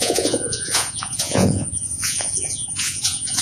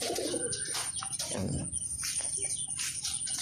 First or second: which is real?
second